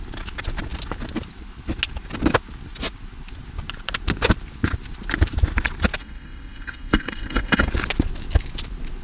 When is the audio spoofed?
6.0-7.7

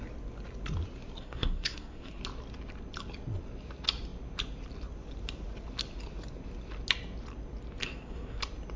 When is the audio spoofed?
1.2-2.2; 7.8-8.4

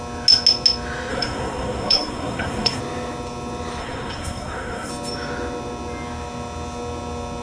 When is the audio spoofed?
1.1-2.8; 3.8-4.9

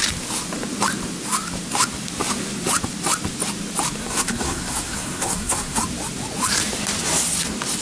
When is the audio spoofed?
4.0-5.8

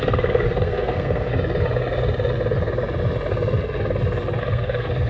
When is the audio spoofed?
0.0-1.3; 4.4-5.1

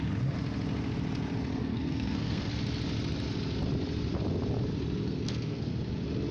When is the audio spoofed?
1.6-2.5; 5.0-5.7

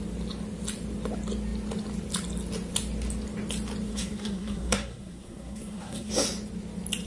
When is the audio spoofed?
3.9-6.1